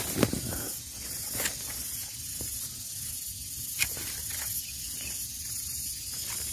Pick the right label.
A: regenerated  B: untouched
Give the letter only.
B